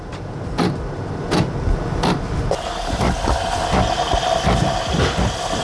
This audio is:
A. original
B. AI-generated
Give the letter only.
A